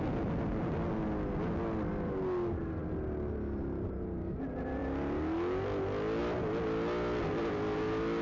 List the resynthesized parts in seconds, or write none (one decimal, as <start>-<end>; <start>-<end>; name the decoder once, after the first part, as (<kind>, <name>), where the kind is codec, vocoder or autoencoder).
none